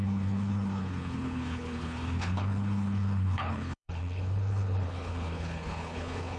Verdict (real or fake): fake